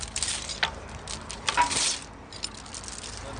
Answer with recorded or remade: recorded